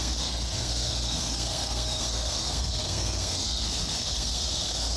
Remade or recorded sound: remade